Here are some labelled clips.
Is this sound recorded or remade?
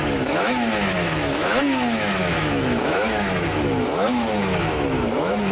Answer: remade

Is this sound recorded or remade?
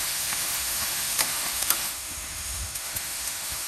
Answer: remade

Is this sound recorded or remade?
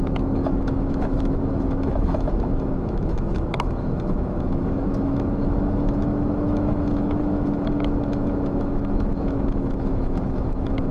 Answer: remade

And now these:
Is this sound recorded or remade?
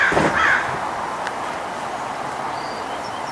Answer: recorded